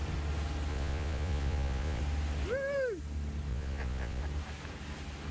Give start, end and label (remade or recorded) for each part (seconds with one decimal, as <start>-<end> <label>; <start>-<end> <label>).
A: 0.0-0.7 recorded; 0.7-2.0 remade; 2.0-3.5 recorded; 3.5-4.2 remade; 4.2-5.3 recorded